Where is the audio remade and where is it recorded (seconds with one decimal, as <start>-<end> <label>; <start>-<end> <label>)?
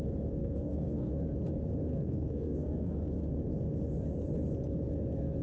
0.0-0.4 recorded; 0.4-1.1 remade; 1.1-1.9 recorded; 1.9-3.0 remade; 3.0-5.4 recorded